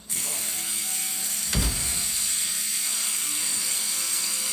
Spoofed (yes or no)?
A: yes